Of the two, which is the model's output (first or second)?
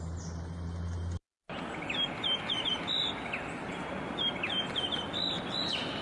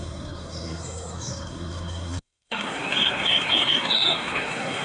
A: second